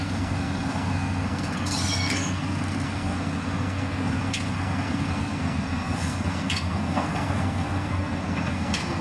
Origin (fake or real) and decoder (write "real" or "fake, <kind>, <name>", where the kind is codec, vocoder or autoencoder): fake, codec, SNAC